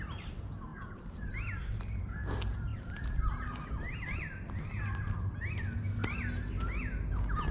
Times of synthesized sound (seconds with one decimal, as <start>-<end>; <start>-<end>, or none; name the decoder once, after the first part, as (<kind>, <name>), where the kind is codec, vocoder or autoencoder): 0.7-2.0 (vocoder, BigVGAN v2)